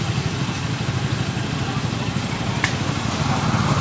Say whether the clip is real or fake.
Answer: real